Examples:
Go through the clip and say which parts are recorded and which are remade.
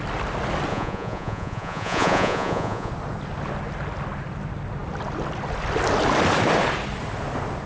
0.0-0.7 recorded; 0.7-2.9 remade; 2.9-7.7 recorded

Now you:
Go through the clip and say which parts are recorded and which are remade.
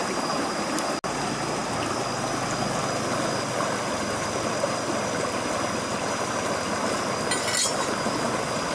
0.0-8.7 recorded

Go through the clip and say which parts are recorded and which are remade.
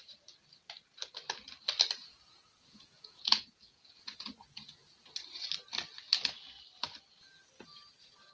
0.0-2.1 recorded; 2.1-5.1 remade; 5.1-8.3 recorded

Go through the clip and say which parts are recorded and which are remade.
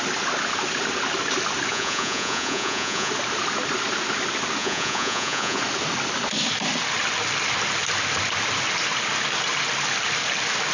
0.0-1.7 recorded; 1.7-3.1 remade; 3.1-4.6 recorded; 4.6-5.6 remade; 5.6-10.7 recorded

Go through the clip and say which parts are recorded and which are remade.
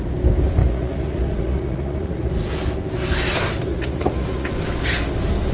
0.0-0.6 recorded; 0.6-2.3 remade; 2.3-3.7 recorded; 3.7-4.5 remade; 4.5-5.5 recorded